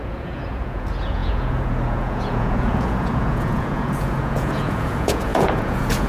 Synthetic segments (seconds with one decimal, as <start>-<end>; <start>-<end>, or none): 0.0-6.1